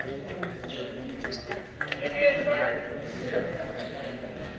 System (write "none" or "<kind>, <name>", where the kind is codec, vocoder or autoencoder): codec, SNAC